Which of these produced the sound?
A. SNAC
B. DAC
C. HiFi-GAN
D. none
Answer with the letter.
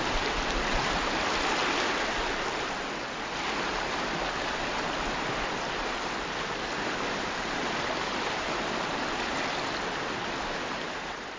D